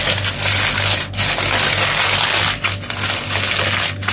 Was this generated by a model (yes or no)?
no